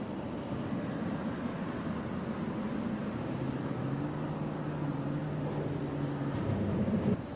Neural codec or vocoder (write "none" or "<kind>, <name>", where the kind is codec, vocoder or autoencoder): none